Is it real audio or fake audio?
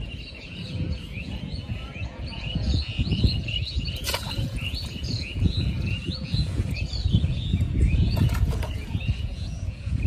fake